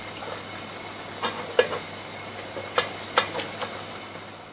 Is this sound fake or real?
real